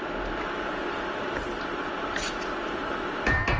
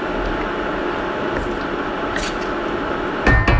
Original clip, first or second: second